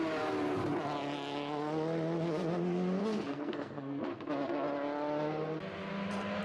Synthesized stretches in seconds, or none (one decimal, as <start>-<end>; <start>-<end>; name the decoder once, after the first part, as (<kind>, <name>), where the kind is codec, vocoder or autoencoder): 3.0-4.3 (codec, SNAC)